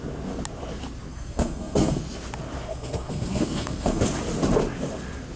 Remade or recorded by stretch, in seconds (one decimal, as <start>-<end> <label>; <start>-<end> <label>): 0.0-1.1 recorded; 1.1-2.0 remade; 2.0-2.7 recorded; 2.7-4.0 remade; 4.0-5.4 recorded